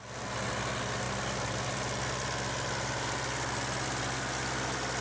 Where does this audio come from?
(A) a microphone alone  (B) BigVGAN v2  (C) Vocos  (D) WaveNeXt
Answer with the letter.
A